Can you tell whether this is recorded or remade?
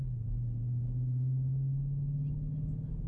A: recorded